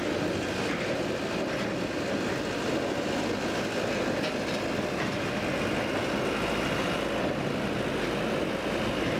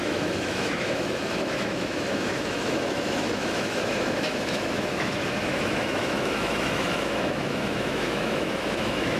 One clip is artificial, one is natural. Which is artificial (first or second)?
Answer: second